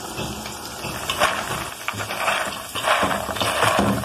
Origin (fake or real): real